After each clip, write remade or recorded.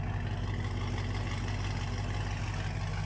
recorded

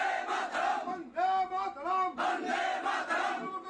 recorded